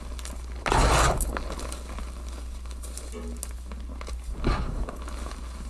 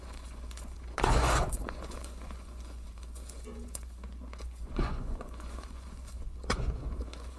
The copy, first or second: second